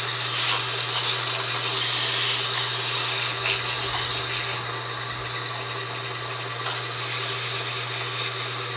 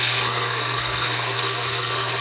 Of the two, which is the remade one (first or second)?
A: second